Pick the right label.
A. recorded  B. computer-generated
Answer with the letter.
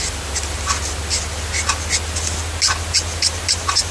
A